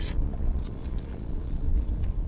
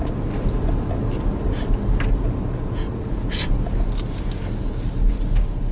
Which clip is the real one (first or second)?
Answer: second